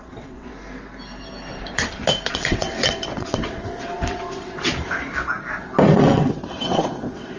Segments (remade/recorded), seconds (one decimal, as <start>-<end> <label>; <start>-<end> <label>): 0.0-0.5 remade; 0.5-2.3 recorded; 2.3-4.7 remade; 4.7-5.9 recorded; 5.9-7.4 remade